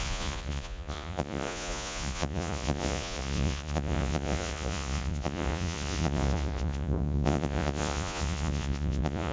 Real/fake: fake